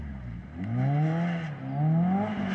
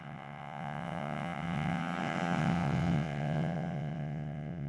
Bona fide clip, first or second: first